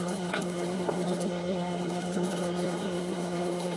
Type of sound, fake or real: fake